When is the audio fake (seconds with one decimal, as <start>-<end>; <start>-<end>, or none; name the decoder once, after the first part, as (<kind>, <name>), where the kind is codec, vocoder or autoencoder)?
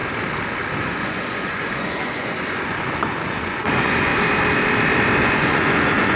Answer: 0.8-4.1 (vocoder, Vocos); 5.2-6.2